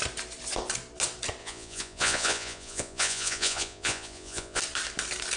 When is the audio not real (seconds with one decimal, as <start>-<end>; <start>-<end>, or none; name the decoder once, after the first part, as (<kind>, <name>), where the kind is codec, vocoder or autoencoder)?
1.4-4.6 (vocoder, Vocos)